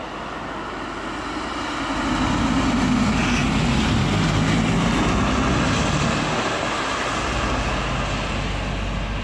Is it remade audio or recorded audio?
recorded